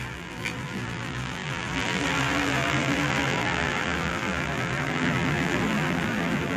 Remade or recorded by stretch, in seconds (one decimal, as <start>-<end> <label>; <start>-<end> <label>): 0.0-6.6 remade

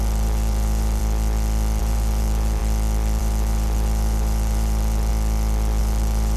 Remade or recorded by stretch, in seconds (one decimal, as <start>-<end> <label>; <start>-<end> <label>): 0.0-1.0 remade; 1.0-1.8 recorded; 1.8-2.6 remade; 2.6-3.2 recorded; 3.2-5.1 remade; 5.1-5.8 recorded; 5.8-6.4 remade

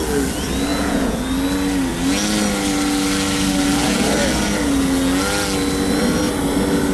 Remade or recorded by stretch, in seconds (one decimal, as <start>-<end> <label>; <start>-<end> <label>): 0.0-0.7 recorded; 0.7-1.2 remade; 1.2-6.9 recorded

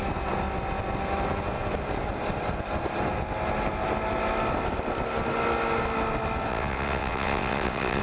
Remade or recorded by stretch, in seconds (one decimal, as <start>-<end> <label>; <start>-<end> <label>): 0.0-6.5 recorded; 6.5-8.0 remade

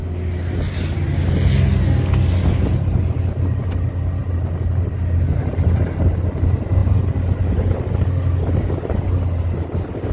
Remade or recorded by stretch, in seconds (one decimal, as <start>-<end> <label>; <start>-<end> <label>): 0.0-10.1 recorded

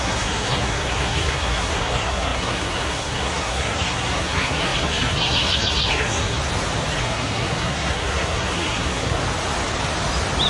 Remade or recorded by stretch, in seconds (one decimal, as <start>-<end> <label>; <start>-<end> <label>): 0.0-6.4 remade; 6.4-7.0 recorded; 7.0-9.2 remade; 9.2-10.5 recorded

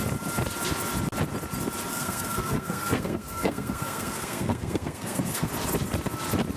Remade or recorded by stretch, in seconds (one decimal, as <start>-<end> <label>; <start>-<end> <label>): 0.0-1.9 recorded; 1.9-5.5 remade; 5.5-6.6 recorded